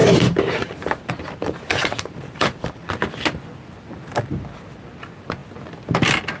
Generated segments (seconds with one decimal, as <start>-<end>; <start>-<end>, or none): 0.0-2.9